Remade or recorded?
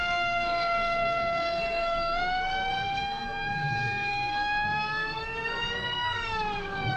remade